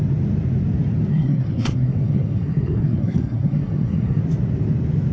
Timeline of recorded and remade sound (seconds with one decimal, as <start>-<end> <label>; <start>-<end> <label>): 0.0-1.1 recorded; 1.1-4.2 remade; 4.2-5.1 recorded